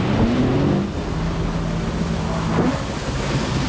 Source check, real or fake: real